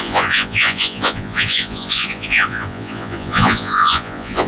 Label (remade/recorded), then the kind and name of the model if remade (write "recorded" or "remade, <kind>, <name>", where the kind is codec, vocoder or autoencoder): remade, vocoder, Vocos